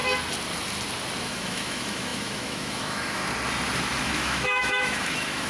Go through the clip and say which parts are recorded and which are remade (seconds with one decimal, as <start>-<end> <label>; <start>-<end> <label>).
0.0-1.2 recorded; 1.2-3.2 remade; 3.2-4.0 recorded; 4.0-5.5 remade